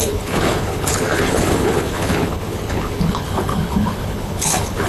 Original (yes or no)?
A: no